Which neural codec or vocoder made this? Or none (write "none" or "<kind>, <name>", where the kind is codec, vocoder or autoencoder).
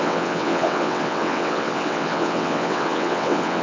vocoder, WaveNeXt